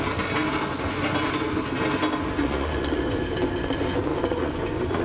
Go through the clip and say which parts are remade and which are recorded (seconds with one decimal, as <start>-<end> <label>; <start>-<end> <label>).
0.0-2.4 recorded; 2.4-3.2 remade; 3.2-4.1 recorded; 4.1-5.0 remade